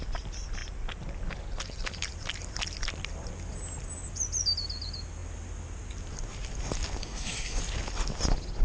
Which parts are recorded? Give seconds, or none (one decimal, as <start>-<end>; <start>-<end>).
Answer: 0.0-7.0; 7.6-8.6